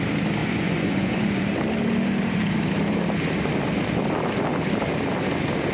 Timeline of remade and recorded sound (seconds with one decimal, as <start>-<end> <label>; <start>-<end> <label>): 0.0-0.4 recorded; 0.4-1.2 remade; 1.2-5.7 recorded